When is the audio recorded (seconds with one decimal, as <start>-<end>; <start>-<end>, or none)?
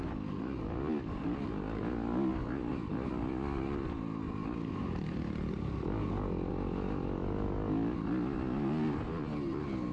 0.0-2.7; 6.5-9.9